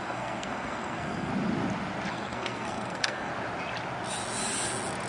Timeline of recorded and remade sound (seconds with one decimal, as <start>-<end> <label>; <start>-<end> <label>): 0.0-1.3 remade; 1.3-2.1 recorded; 2.1-3.3 remade; 3.3-5.1 recorded